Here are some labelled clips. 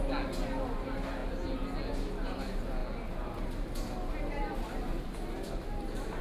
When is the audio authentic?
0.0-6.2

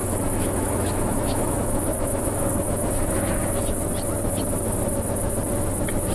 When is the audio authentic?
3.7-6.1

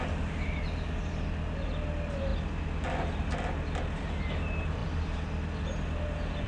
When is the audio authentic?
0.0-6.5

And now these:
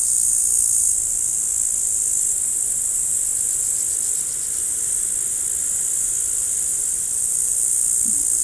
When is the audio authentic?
0.0-8.4

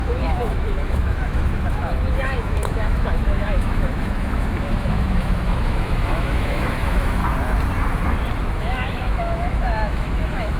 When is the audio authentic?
7.2-8.5